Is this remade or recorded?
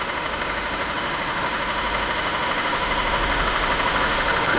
remade